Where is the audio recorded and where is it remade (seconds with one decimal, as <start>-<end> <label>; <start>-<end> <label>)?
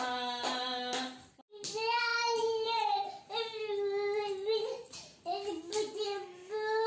0.0-6.9 recorded